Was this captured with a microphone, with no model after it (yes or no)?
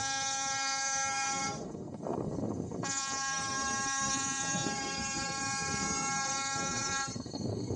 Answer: no